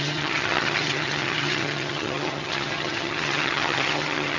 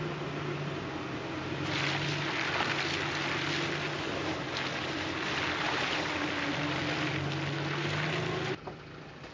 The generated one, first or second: first